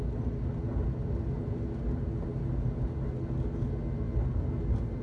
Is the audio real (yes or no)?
yes